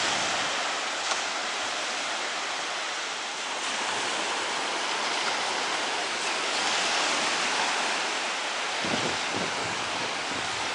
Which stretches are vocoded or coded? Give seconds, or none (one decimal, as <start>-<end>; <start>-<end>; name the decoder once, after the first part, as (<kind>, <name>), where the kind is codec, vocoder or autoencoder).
6.0-7.2 (codec, DAC); 9.6-10.7